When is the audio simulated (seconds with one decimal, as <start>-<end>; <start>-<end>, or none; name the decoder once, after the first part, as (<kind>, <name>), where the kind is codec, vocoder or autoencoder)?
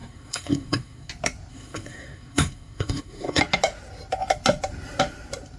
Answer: 0.0-1.1 (codec, SNAC); 1.5-3.4